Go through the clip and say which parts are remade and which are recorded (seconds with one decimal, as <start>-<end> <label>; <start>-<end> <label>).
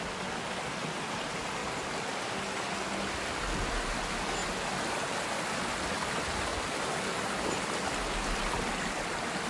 0.0-1.6 recorded; 1.6-2.2 remade; 2.2-6.5 recorded; 6.5-9.5 remade